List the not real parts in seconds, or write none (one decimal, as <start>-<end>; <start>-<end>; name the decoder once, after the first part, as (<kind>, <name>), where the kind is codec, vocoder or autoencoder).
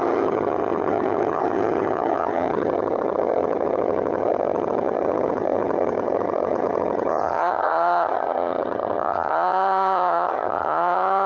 0.0-11.3 (vocoder, HiFi-GAN)